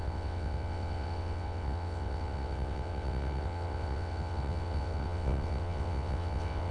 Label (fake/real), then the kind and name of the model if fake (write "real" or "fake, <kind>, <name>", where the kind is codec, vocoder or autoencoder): fake, vocoder, WaveNeXt